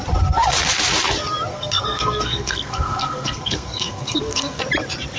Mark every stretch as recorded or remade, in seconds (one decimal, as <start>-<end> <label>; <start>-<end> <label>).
0.0-1.5 recorded; 1.5-4.6 remade; 4.6-5.2 recorded